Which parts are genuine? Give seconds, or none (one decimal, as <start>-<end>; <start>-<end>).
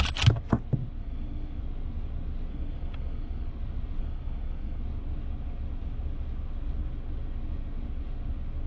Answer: 0.0-1.0; 1.6-2.5; 3.5-4.0; 4.8-8.7